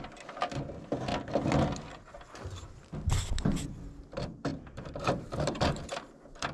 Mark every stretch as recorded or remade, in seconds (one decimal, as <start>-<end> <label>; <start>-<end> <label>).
0.0-4.5 recorded; 4.5-5.8 remade; 5.8-6.5 recorded